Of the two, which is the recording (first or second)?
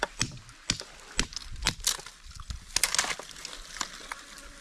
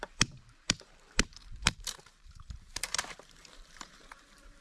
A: first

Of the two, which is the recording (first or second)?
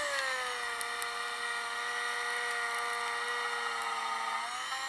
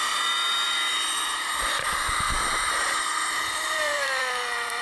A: first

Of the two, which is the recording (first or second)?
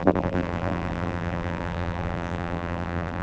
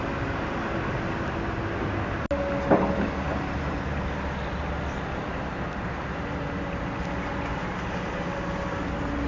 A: second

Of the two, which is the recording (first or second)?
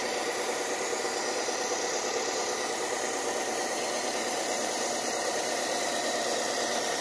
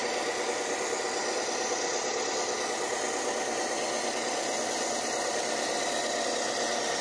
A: second